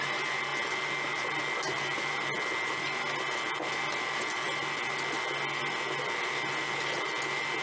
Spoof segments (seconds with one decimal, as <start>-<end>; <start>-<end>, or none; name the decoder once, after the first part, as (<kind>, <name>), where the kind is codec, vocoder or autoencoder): none